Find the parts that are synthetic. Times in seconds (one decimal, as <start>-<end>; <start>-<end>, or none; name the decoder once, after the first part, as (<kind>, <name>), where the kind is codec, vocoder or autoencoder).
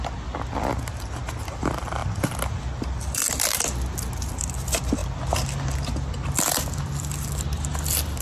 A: none